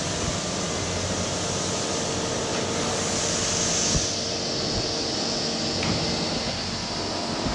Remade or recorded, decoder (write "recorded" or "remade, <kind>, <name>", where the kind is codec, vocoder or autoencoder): recorded